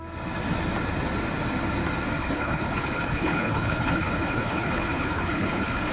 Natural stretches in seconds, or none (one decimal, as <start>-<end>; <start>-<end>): 0.0-2.2